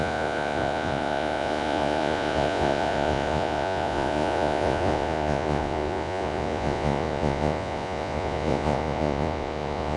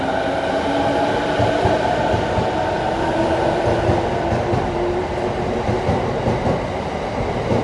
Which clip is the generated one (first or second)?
first